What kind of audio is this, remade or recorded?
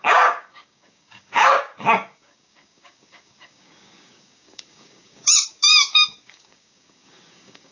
remade